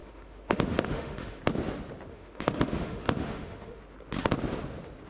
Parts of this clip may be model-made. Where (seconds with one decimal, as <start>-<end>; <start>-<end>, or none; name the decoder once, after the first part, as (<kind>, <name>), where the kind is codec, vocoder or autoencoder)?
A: 0.0-1.4 (autoencoder, DAC-VAE); 2.1-3.8